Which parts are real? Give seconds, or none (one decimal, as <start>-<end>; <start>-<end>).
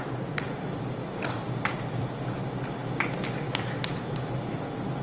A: none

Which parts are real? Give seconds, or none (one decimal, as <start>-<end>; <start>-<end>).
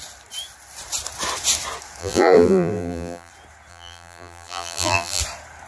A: 0.0-2.0; 3.3-3.7; 5.2-5.7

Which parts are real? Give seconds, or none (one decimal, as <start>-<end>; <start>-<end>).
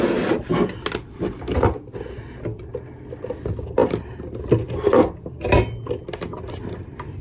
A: 0.0-3.8; 4.4-7.2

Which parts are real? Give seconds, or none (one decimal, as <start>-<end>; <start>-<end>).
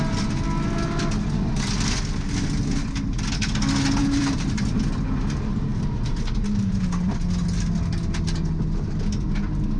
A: 0.0-4.0; 4.8-5.7; 6.8-9.8